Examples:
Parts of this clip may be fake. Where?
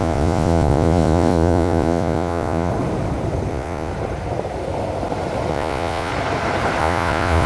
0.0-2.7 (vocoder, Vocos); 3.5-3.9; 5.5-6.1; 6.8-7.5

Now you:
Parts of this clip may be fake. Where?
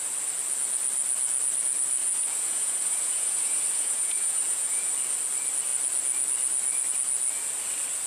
2.0-4.9 (vocoder, Vocos)